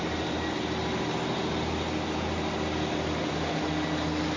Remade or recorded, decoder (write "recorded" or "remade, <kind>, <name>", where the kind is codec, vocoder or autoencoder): recorded